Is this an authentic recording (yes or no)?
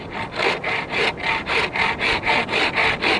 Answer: yes